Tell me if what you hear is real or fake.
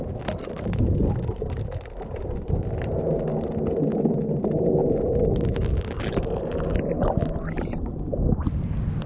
real